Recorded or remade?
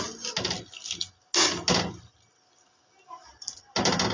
recorded